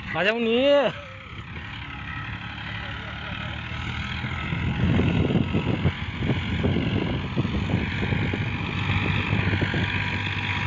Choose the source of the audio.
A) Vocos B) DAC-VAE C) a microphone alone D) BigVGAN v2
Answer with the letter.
C